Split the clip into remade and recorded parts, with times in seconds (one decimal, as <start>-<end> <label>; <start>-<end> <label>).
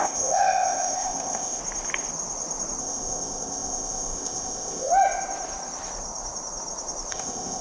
0.0-1.6 remade; 1.6-2.8 recorded; 2.8-4.9 remade; 4.9-7.1 recorded; 7.1-7.6 remade